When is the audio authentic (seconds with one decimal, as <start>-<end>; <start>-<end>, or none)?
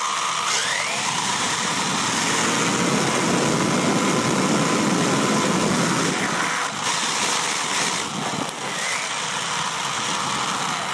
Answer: 0.0-0.6; 1.8-10.9